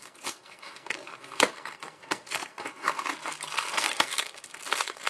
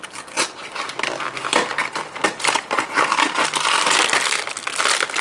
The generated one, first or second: first